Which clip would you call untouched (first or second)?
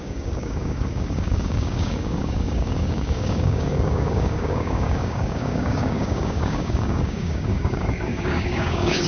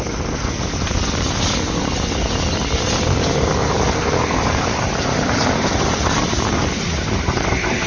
second